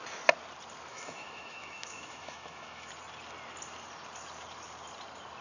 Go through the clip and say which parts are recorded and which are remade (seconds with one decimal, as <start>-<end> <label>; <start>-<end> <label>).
0.0-0.9 recorded; 0.9-2.9 remade; 2.9-5.4 recorded